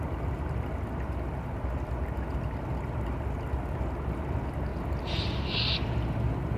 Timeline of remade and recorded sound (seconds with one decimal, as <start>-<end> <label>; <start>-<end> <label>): 0.0-6.6 recorded